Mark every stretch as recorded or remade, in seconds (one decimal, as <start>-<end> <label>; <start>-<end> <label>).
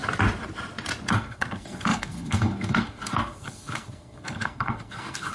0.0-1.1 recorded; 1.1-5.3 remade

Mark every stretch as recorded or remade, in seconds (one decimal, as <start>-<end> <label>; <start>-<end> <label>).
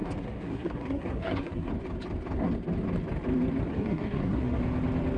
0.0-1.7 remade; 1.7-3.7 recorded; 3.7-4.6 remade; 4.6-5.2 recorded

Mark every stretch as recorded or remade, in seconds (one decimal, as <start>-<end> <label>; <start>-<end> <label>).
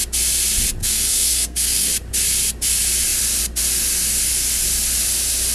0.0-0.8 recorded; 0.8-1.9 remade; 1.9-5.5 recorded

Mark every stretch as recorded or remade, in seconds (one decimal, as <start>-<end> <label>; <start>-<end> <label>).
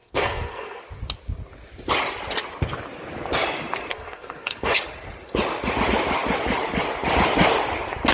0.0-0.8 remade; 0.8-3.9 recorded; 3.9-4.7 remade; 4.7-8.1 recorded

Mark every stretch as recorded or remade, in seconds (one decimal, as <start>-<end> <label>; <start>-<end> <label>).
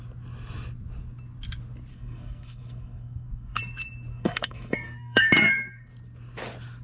0.0-1.9 recorded; 1.9-3.6 remade; 3.6-4.1 recorded; 4.1-5.9 remade; 5.9-6.8 recorded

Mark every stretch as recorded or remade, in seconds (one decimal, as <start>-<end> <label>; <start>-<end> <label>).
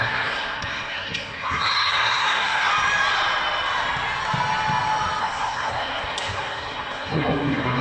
0.0-2.7 remade; 2.7-5.2 recorded; 5.2-7.8 remade